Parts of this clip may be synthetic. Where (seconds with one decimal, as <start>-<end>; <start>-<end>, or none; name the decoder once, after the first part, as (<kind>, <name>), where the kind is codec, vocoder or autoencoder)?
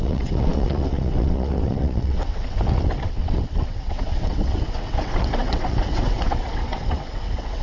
0.0-7.6 (vocoder, WaveNeXt)